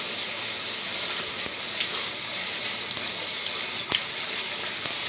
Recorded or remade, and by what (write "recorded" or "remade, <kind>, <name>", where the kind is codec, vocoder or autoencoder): recorded